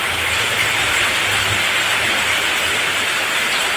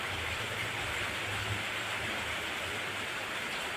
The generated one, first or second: second